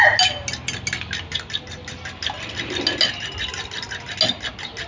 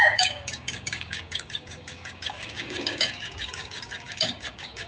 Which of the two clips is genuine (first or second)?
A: first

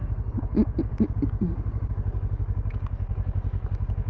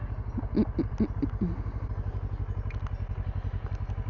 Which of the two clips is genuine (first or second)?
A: second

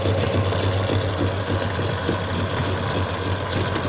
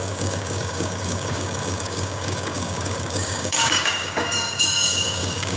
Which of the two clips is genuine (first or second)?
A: first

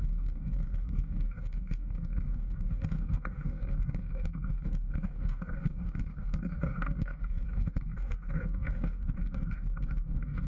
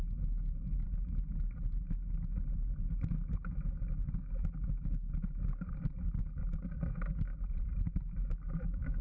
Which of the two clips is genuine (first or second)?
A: second